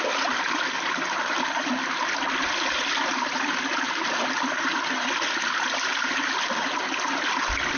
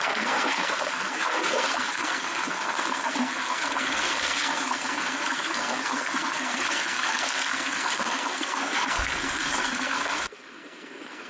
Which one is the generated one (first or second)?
second